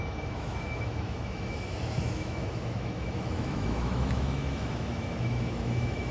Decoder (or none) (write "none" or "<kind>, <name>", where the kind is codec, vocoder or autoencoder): autoencoder, DAC-VAE